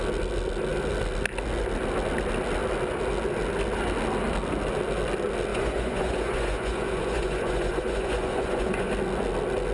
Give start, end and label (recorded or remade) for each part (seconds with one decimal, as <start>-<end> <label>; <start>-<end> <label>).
0.0-5.5 recorded; 5.5-8.9 remade; 8.9-9.7 recorded